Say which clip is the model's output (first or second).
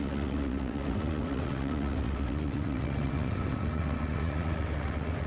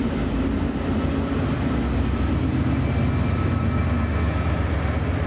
first